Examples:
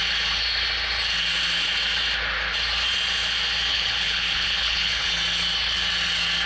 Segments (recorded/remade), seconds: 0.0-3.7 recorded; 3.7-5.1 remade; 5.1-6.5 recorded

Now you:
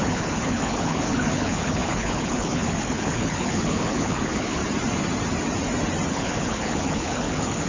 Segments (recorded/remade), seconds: 0.0-4.6 remade; 4.6-6.1 recorded; 6.1-7.7 remade